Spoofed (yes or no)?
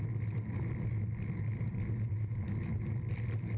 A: no